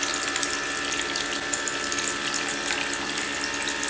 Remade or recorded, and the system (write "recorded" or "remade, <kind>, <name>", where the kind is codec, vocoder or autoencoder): recorded